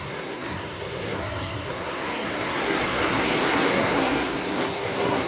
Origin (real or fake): fake